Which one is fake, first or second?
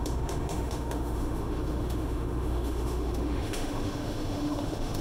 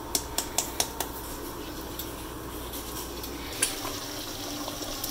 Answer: first